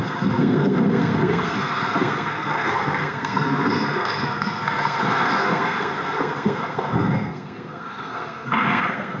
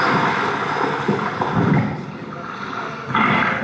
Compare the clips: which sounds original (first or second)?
second